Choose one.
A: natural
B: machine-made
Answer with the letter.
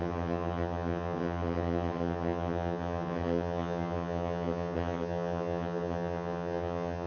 B